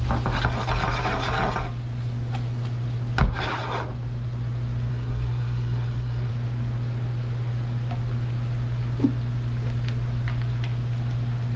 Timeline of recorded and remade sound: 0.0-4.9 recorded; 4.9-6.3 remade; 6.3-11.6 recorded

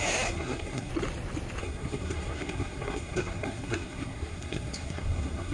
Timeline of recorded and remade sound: 0.0-0.9 remade; 0.9-1.6 recorded; 1.6-5.5 remade

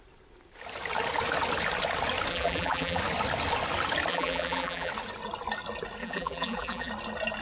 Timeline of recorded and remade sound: 0.0-2.3 recorded; 2.3-3.0 remade; 3.0-4.1 recorded; 4.1-4.9 remade; 4.9-6.0 recorded; 6.0-6.9 remade; 6.9-7.4 recorded

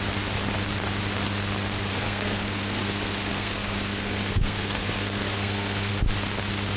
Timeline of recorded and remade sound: 0.0-1.9 recorded; 1.9-5.9 remade; 5.9-6.8 recorded

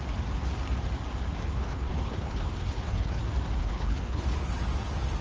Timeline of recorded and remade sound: 0.0-1.5 recorded; 1.5-3.2 remade; 3.2-3.6 recorded; 3.6-4.6 remade; 4.6-5.2 recorded

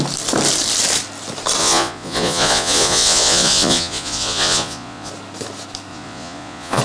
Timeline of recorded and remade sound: 0.0-1.6 recorded; 1.6-5.1 remade; 5.1-5.9 recorded; 5.9-6.8 remade

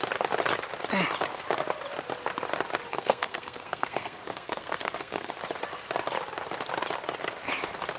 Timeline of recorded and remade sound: 0.0-2.9 recorded; 2.9-5.3 remade; 5.3-8.0 recorded

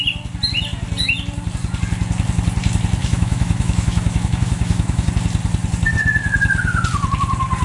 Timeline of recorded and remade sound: 0.0-3.0 recorded; 3.0-5.1 remade; 5.1-7.6 recorded